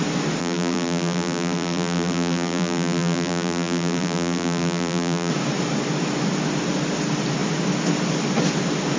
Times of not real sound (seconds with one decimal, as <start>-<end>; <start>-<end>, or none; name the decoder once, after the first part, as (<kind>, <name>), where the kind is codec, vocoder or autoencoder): 0.4-5.3 (vocoder, BigVGAN v2)